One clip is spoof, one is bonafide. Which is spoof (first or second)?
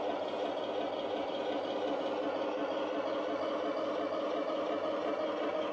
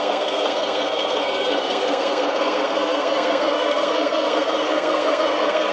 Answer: second